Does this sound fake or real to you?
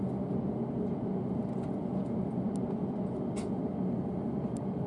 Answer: real